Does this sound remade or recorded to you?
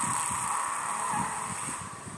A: recorded